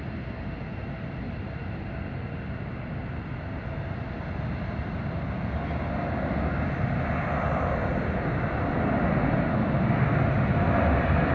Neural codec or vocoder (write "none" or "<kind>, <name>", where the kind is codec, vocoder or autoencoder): none